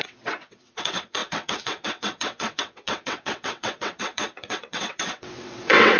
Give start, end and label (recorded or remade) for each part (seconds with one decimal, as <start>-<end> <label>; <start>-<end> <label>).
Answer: 0.0-6.0 remade